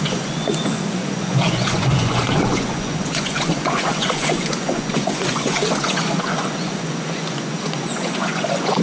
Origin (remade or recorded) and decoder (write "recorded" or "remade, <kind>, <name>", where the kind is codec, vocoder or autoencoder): remade, vocoder, Vocos